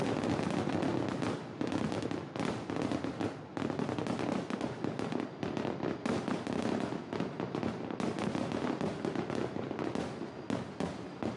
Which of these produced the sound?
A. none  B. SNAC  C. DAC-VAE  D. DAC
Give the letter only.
A